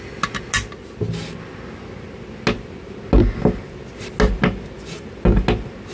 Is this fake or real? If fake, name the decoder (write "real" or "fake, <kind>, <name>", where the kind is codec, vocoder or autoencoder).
real